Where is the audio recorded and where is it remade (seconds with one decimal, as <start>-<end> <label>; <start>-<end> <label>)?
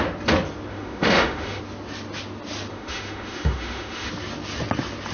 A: 0.0-0.7 recorded; 0.7-1.6 remade; 1.6-2.7 recorded; 2.7-4.1 remade; 4.1-5.1 recorded